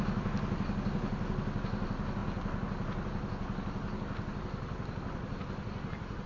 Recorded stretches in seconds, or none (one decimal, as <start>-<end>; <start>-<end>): 0.0-6.3